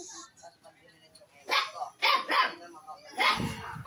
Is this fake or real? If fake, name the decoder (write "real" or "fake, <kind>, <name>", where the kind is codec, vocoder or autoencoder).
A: real